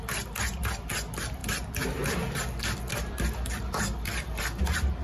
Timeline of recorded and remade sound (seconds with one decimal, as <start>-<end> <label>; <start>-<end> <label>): 0.0-1.4 recorded; 1.4-4.4 remade; 4.4-5.0 recorded